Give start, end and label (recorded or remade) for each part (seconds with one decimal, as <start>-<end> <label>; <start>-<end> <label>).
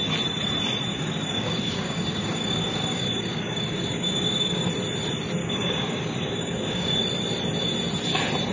0.0-0.9 recorded; 0.9-4.7 remade; 4.7-5.4 recorded; 5.4-7.0 remade; 7.0-8.5 recorded